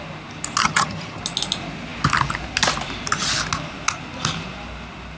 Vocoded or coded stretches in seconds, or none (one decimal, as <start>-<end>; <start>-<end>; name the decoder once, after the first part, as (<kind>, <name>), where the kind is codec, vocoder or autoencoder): 0.6-1.2 (vocoder, HiFi-GAN)